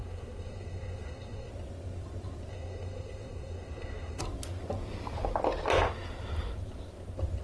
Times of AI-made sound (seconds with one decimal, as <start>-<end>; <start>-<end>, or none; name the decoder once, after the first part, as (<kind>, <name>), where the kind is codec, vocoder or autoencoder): 0.0-1.5 (codec, SNAC); 2.5-4.2